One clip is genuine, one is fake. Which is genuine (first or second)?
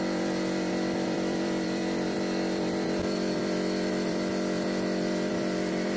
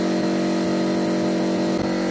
second